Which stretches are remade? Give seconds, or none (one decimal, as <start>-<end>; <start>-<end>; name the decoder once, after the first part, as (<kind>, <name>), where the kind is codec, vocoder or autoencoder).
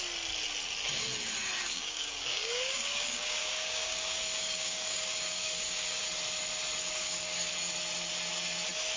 1.6-6.0 (codec, DAC); 6.8-7.5